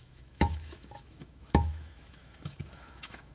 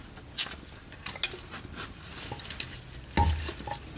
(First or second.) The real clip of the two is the second